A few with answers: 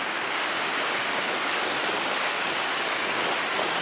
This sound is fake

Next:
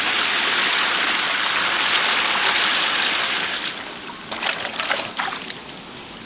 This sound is real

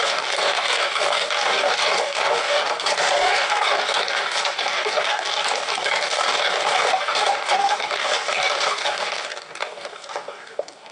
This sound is fake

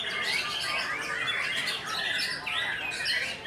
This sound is real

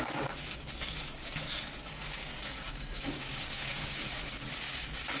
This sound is fake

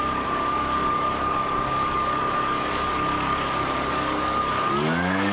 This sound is fake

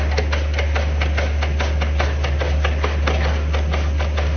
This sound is real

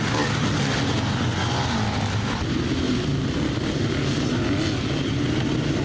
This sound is real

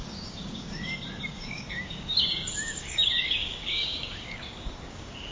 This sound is fake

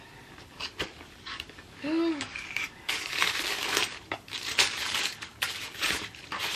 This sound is fake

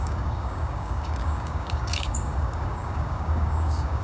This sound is fake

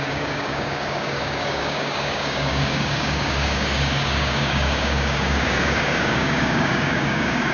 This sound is fake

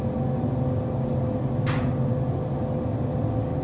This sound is real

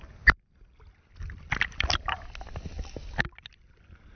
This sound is real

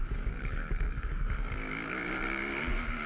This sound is fake